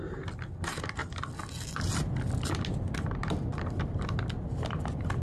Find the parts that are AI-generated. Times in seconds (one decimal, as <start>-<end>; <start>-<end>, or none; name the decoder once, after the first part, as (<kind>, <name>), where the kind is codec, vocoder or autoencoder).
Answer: none